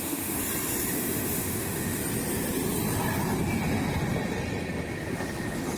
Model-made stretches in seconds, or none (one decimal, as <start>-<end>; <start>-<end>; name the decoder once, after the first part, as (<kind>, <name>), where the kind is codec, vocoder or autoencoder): 0.0-0.4 (autoencoder, DAC-VAE); 0.9-2.0

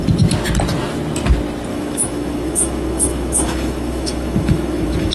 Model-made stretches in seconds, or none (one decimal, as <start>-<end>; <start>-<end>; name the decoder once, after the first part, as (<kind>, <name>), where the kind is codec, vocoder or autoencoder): 1.7-5.1 (autoencoder, DAC-VAE)

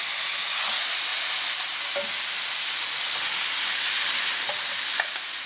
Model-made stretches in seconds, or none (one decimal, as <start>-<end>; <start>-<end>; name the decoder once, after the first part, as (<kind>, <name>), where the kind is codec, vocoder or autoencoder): none

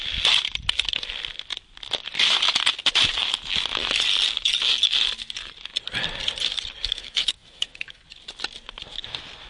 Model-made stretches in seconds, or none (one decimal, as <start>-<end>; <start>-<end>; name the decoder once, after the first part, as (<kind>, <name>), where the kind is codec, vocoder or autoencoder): 6.9-8.0 (autoencoder, DAC-VAE)